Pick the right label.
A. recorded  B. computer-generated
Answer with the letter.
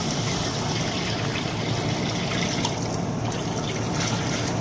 A